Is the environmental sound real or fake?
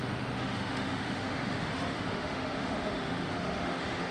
fake